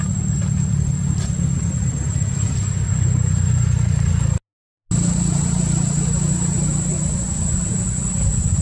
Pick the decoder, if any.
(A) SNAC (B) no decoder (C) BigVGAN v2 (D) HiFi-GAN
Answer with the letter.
B